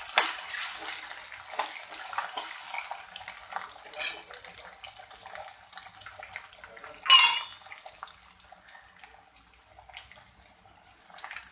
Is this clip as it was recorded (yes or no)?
yes